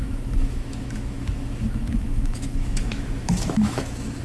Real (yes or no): no